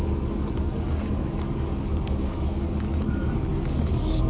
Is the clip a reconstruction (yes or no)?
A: yes